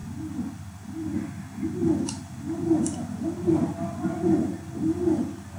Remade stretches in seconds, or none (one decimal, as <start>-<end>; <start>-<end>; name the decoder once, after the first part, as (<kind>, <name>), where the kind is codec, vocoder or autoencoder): none